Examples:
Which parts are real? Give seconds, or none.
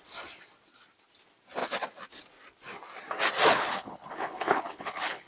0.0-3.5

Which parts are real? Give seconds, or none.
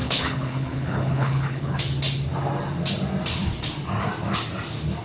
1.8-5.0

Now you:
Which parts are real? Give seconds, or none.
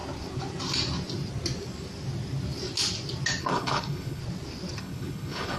0.0-3.4; 4.2-4.8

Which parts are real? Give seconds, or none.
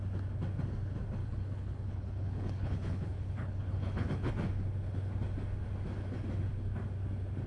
0.0-1.2; 4.3-7.5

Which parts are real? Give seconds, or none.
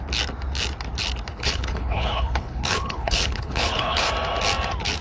0.0-1.3; 4.1-5.0